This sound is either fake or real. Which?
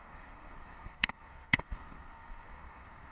fake